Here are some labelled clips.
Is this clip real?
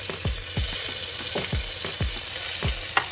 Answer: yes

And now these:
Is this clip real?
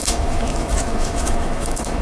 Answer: no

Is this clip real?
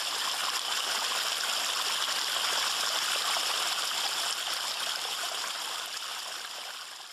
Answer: yes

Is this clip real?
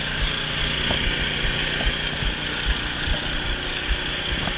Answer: yes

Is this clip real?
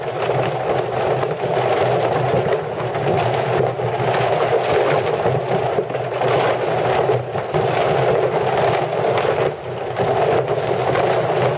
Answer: yes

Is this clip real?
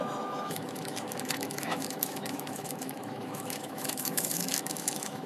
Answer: no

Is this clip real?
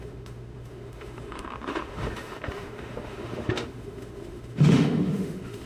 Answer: no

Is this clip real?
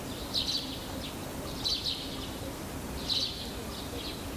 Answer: yes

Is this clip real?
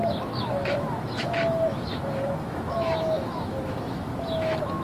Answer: no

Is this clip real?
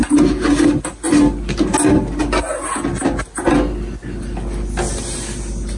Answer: yes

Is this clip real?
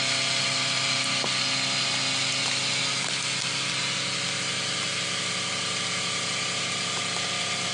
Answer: yes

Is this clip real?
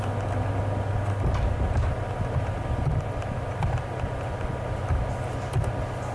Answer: yes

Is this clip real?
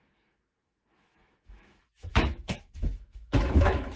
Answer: no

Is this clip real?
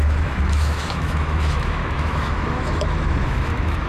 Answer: no